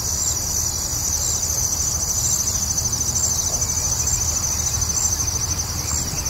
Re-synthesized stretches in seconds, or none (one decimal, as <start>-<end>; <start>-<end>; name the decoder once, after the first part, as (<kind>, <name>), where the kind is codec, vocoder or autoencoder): none